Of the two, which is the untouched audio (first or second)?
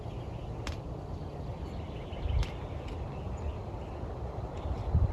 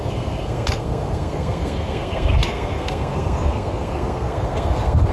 first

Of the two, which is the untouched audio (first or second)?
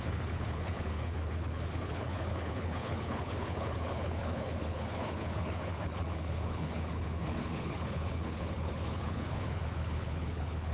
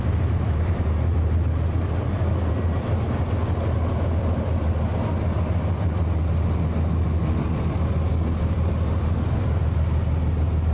second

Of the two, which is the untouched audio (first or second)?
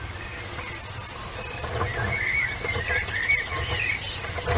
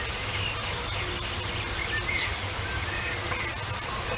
second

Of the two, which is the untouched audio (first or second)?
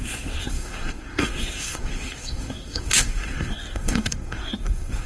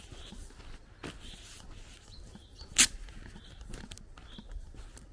second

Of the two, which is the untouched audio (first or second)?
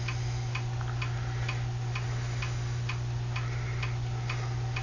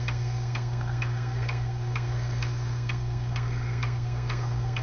first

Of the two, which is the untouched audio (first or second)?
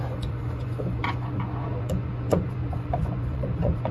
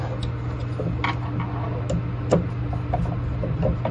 second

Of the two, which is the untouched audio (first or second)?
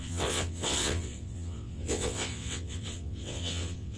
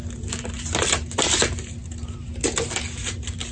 second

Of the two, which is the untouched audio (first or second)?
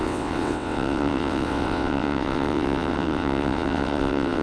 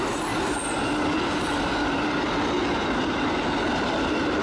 second